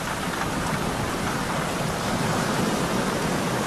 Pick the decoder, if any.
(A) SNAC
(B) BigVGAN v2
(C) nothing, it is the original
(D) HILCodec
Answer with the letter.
C